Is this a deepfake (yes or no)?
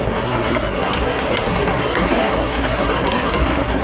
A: yes